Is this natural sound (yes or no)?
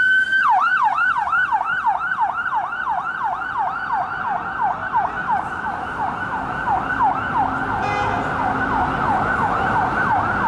yes